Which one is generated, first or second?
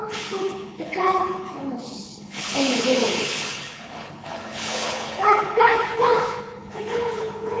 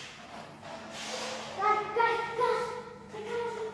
first